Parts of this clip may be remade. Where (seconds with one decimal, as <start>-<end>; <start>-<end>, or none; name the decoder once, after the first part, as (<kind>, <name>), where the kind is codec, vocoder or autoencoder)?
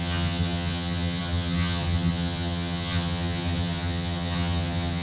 0.0-5.0 (vocoder, HiFi-GAN)